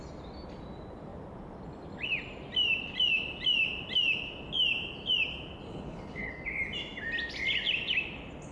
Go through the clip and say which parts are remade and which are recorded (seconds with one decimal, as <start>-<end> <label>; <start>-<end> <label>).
0.0-5.7 recorded; 5.7-6.3 remade; 6.3-8.5 recorded